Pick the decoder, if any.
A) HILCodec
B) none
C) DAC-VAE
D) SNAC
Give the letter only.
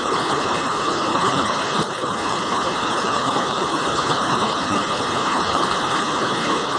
A